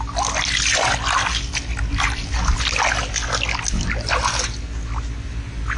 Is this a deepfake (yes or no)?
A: no